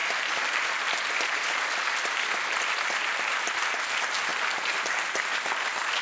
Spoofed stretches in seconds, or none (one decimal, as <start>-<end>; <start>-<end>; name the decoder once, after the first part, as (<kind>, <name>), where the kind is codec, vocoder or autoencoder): none